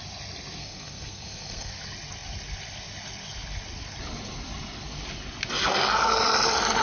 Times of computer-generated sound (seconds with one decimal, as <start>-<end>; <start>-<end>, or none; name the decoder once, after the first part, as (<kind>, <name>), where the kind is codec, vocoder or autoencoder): 0.6-1.7 (codec, SNAC)